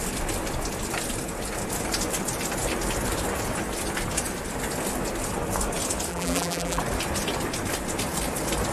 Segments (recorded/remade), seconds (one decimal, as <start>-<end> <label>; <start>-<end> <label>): 0.0-6.1 recorded; 6.1-6.8 remade; 6.8-8.7 recorded